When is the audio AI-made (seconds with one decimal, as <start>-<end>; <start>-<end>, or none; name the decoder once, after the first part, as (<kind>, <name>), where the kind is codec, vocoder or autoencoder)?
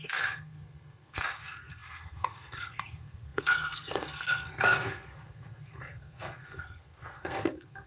0.0-7.9 (codec, SNAC)